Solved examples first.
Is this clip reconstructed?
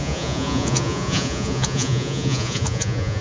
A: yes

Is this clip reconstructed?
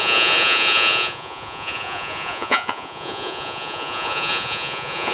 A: yes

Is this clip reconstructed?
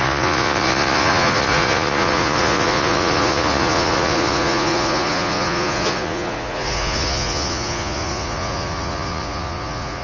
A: yes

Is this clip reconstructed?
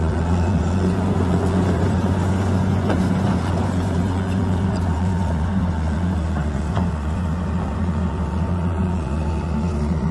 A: yes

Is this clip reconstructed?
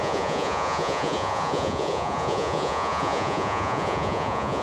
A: yes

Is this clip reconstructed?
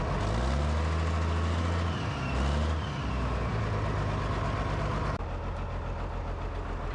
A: no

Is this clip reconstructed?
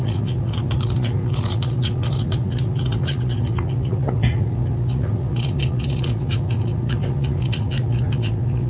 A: yes